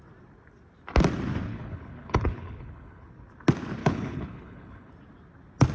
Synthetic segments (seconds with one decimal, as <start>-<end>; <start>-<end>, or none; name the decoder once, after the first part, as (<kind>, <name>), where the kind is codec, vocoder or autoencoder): 1.5-3.1 (codec, HILCodec); 3.8-4.9